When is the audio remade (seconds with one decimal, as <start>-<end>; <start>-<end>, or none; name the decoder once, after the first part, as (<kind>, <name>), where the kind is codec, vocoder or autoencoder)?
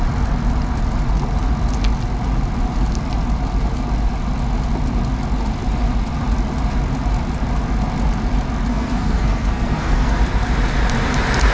8.7-10.2 (codec, SNAC)